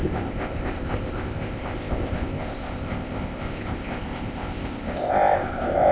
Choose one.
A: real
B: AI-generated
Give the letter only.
B